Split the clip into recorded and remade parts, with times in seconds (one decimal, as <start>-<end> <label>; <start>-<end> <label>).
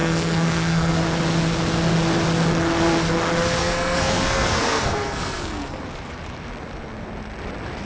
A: 0.0-1.0 remade; 1.0-3.6 recorded; 3.6-5.8 remade; 5.8-7.8 recorded